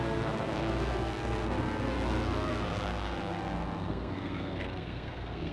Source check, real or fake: fake